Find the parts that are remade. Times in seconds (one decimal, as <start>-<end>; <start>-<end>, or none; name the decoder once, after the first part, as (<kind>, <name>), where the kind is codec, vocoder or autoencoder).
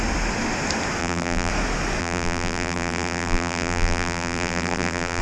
1.0-1.5 (vocoder, BigVGAN v2); 2.0-5.2